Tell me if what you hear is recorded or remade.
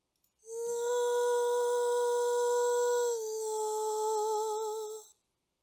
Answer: recorded